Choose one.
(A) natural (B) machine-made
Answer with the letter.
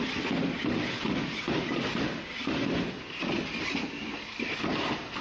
A